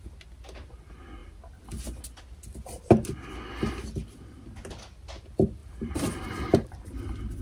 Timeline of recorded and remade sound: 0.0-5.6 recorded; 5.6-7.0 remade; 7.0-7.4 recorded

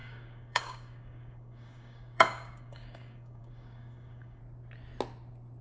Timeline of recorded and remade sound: 0.0-4.4 remade; 4.4-5.6 recorded

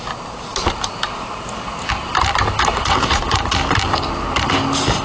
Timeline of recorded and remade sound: 0.0-2.7 recorded; 2.7-3.5 remade; 3.5-5.0 recorded

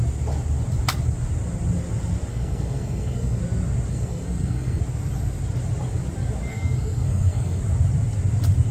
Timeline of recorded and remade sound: 0.0-2.3 recorded; 2.3-3.4 remade; 3.4-3.9 recorded; 3.9-4.8 remade; 4.8-6.5 recorded; 6.5-7.6 remade; 7.6-8.7 recorded

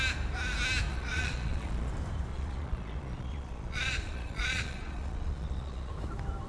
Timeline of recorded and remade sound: 0.0-0.9 recorded; 0.9-1.9 remade; 1.9-2.3 recorded; 2.3-5.9 remade; 5.9-6.5 recorded

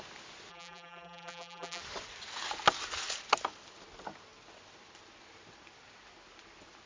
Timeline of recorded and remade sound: 0.0-0.5 recorded; 0.5-1.8 remade; 1.8-6.9 recorded

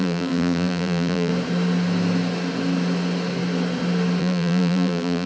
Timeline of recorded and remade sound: 0.0-1.3 remade; 1.3-4.2 recorded; 4.2-5.3 remade